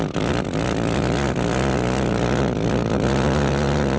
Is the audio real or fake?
real